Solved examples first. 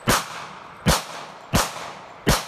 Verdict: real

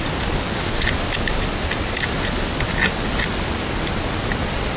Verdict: real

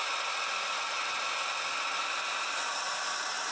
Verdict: real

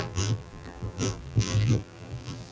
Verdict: fake